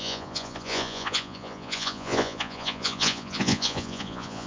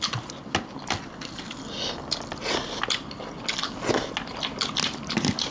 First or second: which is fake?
first